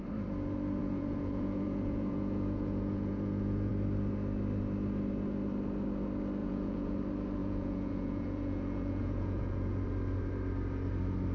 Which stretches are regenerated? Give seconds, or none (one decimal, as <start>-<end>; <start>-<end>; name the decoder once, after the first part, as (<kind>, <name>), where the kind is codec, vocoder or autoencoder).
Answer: 0.8-3.7 (vocoder, Vocos); 6.4-7.0; 7.4-9.8